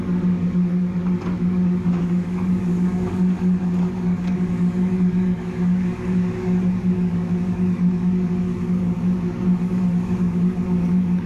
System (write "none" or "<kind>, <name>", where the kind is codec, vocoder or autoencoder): codec, DAC